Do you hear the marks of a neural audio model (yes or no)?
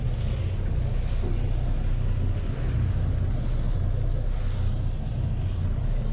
no